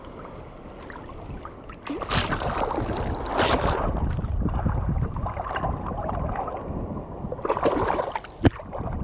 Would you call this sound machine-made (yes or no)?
no